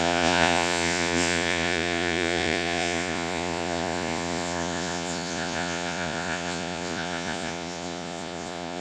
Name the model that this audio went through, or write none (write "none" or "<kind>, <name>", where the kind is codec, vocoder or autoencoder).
vocoder, Vocos